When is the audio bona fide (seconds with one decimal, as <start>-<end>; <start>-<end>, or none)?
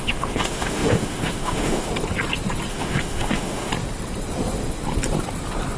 1.9-2.7; 3.7-5.8